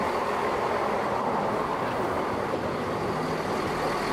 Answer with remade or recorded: recorded